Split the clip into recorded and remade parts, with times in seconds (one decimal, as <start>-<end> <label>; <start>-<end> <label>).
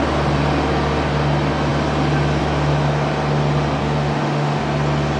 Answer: 0.0-3.8 recorded; 3.8-4.6 remade; 4.6-5.2 recorded